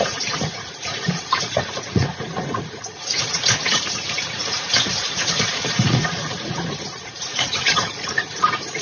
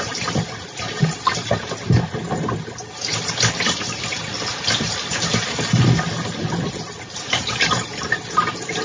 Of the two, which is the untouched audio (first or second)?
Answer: second